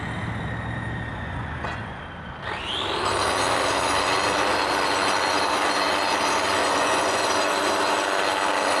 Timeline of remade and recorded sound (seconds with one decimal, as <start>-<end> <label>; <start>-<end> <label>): 0.0-1.1 recorded; 1.1-2.0 remade; 2.0-6.6 recorded; 6.6-7.3 remade; 7.3-8.8 recorded